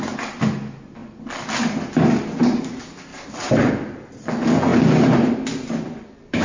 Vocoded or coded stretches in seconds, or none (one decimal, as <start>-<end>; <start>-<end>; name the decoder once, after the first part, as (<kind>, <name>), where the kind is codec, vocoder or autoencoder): 3.1-3.7 (vocoder, BigVGAN v2)

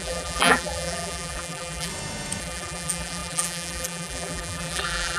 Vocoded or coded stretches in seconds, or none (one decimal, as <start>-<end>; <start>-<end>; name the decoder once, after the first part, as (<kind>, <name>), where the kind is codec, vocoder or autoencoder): 0.0-1.9 (vocoder, BigVGAN v2); 2.4-5.2